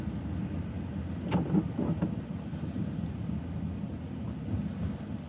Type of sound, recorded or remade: recorded